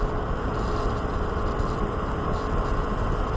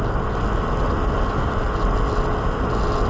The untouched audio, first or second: second